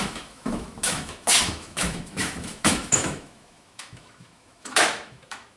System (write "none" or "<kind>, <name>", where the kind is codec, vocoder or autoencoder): autoencoder, DAC-VAE